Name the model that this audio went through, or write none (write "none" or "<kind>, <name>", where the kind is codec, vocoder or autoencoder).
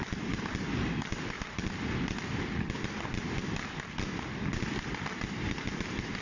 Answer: none